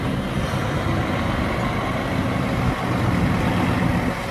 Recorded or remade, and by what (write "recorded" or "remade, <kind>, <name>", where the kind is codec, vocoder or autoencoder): recorded